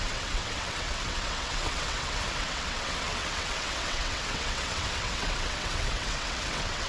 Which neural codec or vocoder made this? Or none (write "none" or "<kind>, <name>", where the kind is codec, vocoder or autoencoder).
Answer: vocoder, WaveNeXt